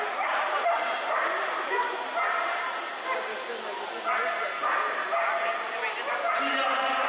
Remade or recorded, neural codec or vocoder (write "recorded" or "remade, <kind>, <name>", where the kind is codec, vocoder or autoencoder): recorded